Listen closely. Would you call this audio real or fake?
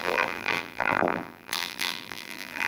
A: fake